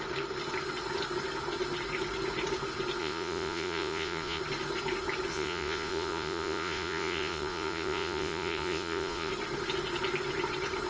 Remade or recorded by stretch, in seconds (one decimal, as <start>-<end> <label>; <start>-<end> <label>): 0.0-3.0 recorded; 3.0-4.4 remade; 4.4-5.3 recorded; 5.3-9.3 remade; 9.3-10.9 recorded